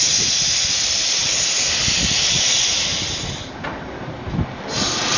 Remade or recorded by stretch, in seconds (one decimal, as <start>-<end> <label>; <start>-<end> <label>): 0.0-5.2 recorded